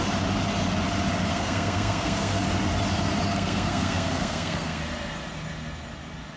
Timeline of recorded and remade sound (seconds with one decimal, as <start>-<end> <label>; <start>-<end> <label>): 0.0-1.3 recorded; 1.3-2.4 remade; 2.4-3.3 recorded; 3.3-4.8 remade; 4.8-6.4 recorded